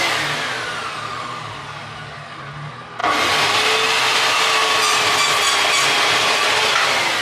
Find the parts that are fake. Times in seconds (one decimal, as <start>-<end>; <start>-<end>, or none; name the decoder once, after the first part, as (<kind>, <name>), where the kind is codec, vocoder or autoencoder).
none